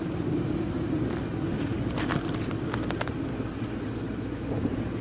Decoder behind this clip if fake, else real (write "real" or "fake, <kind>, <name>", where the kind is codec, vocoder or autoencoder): real